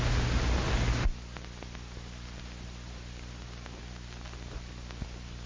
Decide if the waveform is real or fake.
real